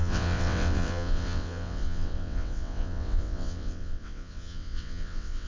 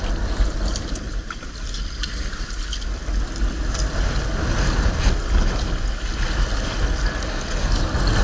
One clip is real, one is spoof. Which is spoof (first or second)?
first